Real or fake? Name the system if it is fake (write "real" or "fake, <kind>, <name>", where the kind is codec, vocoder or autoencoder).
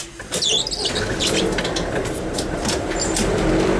real